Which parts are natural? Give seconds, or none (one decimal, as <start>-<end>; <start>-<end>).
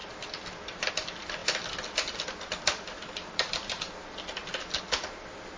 0.0-5.6